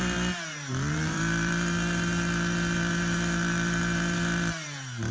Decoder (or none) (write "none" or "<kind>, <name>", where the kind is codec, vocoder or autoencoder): vocoder, BigVGAN v2